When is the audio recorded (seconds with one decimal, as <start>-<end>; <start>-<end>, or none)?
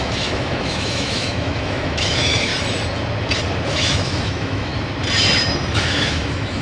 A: 2.5-3.7; 4.7-5.7